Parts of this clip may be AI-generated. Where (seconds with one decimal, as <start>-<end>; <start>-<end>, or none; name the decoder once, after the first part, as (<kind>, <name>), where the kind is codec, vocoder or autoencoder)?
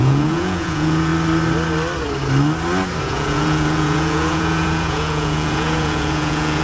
0.0-1.1 (vocoder, Vocos); 3.0-6.6